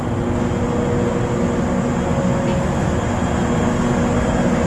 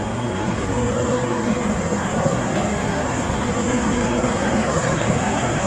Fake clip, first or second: second